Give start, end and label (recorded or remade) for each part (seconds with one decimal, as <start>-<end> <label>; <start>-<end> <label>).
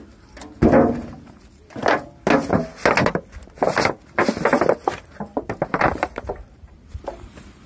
0.0-5.3 recorded; 5.3-7.3 remade; 7.3-7.7 recorded